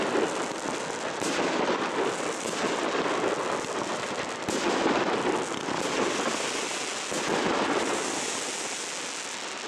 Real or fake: real